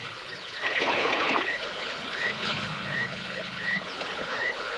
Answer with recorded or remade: remade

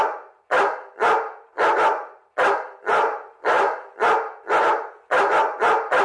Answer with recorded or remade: recorded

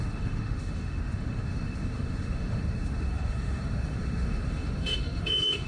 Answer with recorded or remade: remade